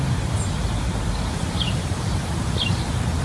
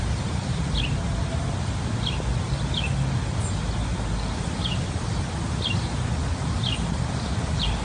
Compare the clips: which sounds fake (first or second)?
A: first